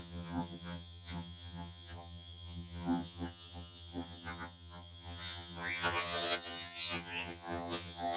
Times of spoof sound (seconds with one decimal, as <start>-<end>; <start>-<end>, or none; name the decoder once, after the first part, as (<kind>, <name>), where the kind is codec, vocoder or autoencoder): 0.0-8.2 (vocoder, HiFi-GAN)

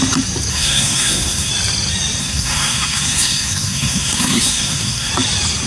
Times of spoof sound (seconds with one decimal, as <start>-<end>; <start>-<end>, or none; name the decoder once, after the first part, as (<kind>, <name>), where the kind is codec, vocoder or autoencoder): 0.5-1.5 (codec, SNAC); 2.2-5.1

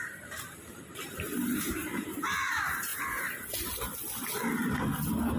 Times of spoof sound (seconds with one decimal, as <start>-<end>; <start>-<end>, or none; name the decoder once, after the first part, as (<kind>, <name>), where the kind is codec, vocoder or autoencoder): 0.0-2.9 (vocoder, BigVGAN v2)

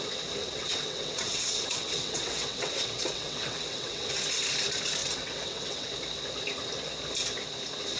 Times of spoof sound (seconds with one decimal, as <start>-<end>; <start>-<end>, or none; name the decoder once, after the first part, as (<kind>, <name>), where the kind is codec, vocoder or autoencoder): 0.4-4.1 (vocoder, WaveNeXt); 5.0-5.9

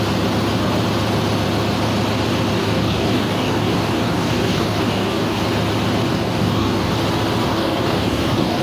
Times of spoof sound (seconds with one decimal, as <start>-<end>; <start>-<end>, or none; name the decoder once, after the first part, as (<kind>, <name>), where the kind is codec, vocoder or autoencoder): 2.6-5.4 (codec, DAC); 6.1-6.9; 7.4-8.6

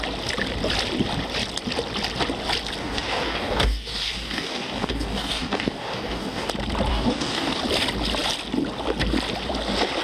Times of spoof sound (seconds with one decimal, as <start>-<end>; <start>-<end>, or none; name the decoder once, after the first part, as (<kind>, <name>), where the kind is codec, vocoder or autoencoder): 2.8-6.5 (codec, DAC); 6.9-7.6

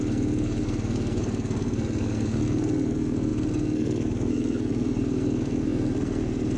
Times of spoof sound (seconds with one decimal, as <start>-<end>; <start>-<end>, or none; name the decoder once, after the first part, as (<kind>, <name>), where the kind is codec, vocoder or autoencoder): 0.0-6.6 (codec, SNAC)